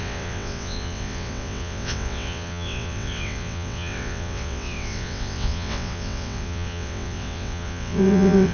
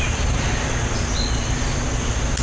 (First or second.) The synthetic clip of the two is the first